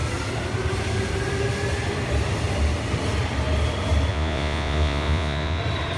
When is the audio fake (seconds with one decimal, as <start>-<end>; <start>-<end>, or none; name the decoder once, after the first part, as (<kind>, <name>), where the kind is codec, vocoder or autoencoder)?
4.1-5.6 (vocoder, Vocos)

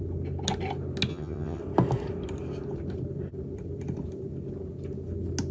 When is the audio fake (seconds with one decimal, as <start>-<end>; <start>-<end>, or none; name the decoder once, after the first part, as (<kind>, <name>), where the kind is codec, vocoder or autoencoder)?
1.1-1.6 (vocoder, HiFi-GAN)

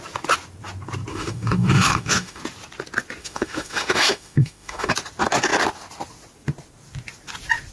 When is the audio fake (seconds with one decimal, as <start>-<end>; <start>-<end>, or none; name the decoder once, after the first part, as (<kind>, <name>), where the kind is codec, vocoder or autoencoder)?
1.1-2.4 (autoencoder, DAC-VAE); 3.2-4.9

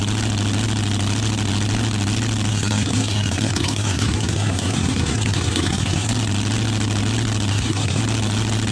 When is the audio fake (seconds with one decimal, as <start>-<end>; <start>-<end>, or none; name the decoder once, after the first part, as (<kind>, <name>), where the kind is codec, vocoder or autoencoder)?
2.5-6.1 (codec, SNAC); 7.5-8.0

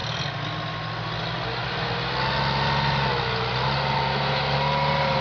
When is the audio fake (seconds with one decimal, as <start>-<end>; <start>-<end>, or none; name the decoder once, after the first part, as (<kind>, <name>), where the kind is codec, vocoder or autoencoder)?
none

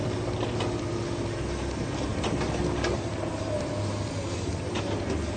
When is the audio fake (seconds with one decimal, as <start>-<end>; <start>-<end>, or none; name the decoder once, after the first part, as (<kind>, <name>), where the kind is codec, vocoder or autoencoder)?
none